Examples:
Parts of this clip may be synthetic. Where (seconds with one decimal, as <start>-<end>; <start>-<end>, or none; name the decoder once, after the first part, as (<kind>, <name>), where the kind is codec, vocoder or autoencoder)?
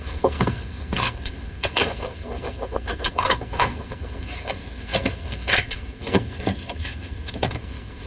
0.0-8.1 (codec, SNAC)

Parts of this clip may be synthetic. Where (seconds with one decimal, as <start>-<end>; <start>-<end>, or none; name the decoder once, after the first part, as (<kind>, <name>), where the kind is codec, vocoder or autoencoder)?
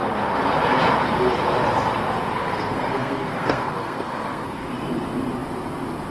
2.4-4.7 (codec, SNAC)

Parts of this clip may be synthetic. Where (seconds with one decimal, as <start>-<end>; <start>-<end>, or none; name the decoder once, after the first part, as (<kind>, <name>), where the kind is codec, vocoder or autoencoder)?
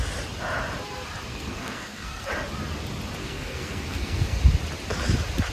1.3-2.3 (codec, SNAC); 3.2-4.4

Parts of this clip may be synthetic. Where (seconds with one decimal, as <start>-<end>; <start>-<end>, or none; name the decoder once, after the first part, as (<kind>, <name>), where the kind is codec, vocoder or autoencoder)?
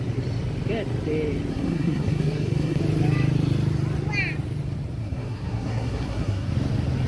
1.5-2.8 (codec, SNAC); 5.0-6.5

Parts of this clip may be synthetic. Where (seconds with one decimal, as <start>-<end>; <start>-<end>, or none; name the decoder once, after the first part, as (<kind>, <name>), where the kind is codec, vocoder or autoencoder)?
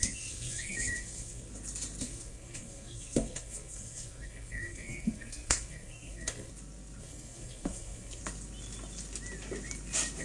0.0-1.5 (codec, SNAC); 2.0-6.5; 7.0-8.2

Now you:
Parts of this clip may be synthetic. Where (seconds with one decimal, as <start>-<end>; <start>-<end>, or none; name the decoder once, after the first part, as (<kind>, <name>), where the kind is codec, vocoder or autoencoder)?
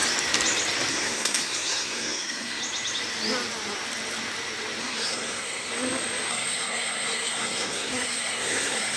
0.9-2.6 (codec, SNAC); 4.8-5.7; 6.3-9.0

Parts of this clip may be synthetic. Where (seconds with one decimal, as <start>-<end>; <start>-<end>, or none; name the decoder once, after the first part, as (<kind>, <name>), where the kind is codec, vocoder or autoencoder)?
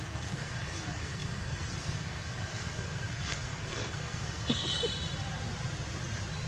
0.0-4.8 (codec, SNAC)